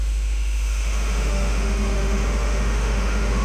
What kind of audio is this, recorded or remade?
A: remade